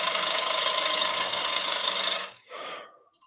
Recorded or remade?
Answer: remade